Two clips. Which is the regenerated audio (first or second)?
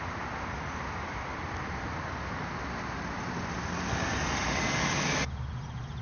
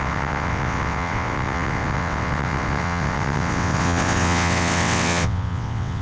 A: second